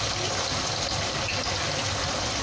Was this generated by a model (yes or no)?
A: no